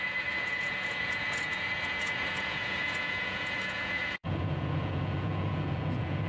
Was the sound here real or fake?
fake